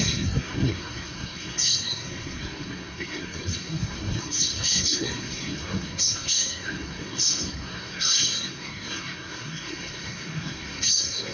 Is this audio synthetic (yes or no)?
yes